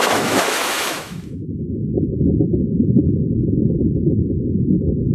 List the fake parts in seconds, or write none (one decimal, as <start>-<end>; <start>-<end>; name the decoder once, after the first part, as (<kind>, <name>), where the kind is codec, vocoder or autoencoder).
0.0-3.1 (autoencoder, DAC-VAE)